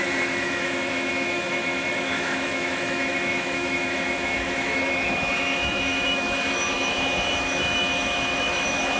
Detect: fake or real fake